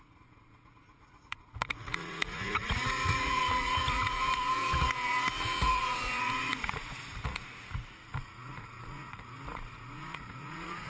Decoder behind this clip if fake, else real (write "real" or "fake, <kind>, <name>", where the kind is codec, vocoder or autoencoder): fake, vocoder, Vocos